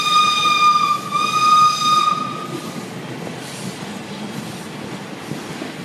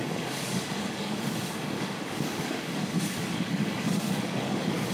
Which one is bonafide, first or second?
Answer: first